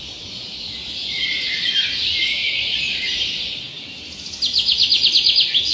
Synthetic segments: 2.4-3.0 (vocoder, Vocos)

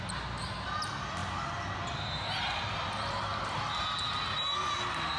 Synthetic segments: none

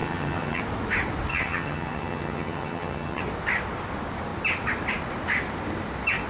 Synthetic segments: 0.0-0.6 (vocoder, HiFi-GAN); 1.3-3.2

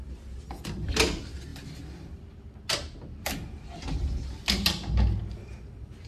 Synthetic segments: none

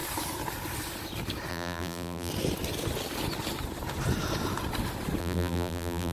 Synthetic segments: 1.5-2.3 (vocoder, BigVGAN v2); 5.2-6.1

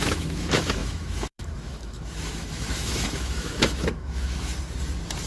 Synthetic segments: 0.0-4.5 (autoencoder, DAC-VAE)

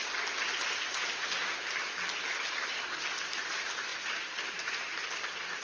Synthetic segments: 3.9-5.0 (vocoder, BigVGAN v2)